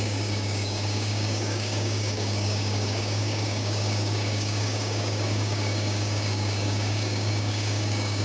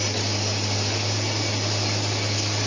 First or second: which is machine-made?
first